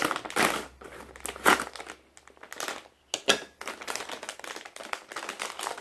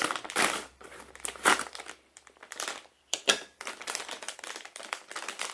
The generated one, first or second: second